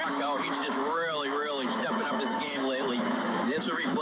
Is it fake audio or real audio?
fake